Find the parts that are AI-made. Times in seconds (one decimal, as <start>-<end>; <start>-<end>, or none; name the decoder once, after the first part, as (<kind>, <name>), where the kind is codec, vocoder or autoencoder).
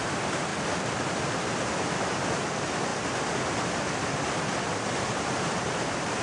0.0-0.5 (vocoder, BigVGAN v2); 1.1-2.9; 4.7-6.2